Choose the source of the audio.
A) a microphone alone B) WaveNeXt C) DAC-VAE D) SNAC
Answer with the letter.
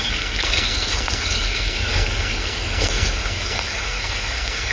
D